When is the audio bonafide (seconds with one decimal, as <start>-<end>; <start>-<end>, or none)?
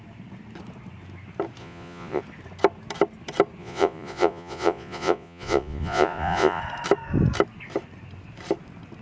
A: 0.0-1.6; 2.2-3.6; 6.6-9.0